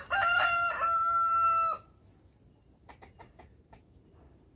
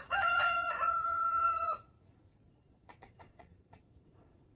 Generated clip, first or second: second